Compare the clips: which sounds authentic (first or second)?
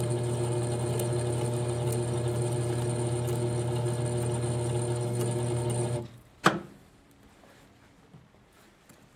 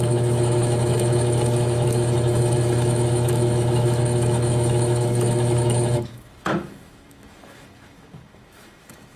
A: first